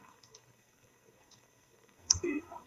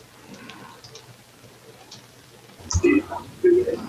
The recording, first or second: second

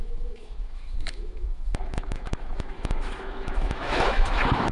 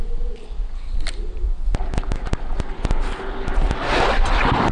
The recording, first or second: second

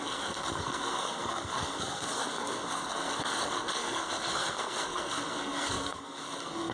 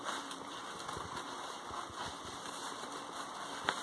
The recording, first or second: second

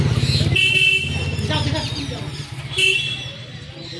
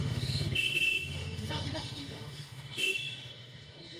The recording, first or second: first